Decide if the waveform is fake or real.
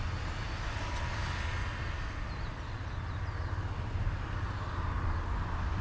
real